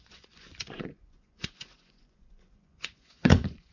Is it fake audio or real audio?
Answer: fake